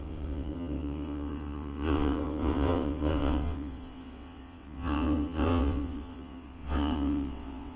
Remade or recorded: remade